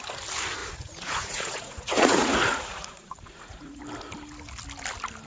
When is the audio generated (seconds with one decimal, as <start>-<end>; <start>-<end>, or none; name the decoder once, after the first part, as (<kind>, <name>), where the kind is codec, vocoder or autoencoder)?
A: 0.6-3.8 (vocoder, Vocos)